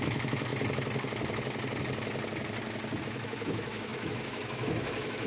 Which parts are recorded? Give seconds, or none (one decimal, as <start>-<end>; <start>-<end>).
0.5-3.0